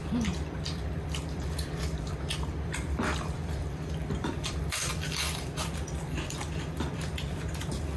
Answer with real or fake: fake